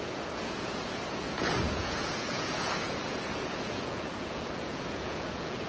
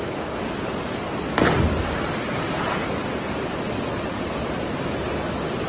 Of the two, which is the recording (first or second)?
second